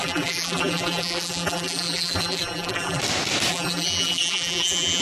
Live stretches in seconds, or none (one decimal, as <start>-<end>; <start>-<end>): 3.0-3.5